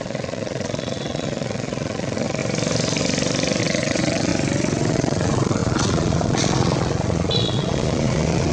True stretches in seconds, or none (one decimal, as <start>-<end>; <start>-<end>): 2.4-3.6; 4.3-4.9